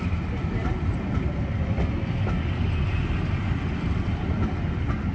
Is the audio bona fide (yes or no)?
yes